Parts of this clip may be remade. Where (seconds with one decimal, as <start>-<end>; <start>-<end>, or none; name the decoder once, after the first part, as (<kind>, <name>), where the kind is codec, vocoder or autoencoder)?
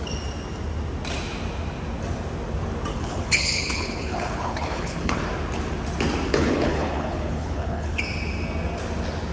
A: 2.9-5.2 (codec, HILCodec); 6.3-8.0